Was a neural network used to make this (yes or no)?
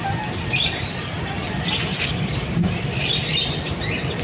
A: no